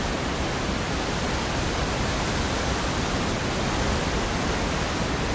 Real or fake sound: real